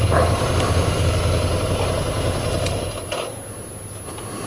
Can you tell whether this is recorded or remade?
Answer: recorded